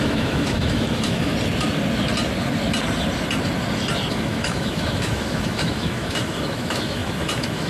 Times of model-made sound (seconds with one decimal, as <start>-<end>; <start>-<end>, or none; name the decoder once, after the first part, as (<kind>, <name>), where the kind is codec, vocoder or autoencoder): 0.0-1.3 (autoencoder, DAC-VAE); 4.1-7.7